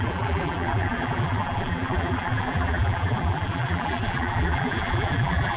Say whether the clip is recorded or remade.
remade